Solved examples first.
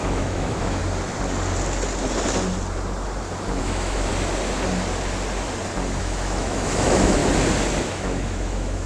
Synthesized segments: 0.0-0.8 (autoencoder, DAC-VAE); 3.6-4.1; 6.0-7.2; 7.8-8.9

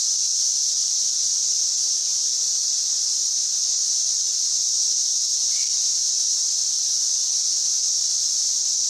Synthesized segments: none

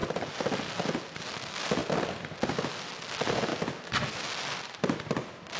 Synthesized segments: none